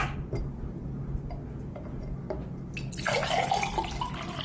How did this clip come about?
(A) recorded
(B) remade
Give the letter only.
A